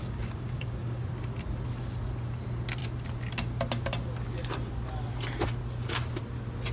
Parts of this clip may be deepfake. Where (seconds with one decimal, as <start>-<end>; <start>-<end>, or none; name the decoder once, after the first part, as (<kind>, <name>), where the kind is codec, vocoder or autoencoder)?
0.0-1.0 (codec, DAC)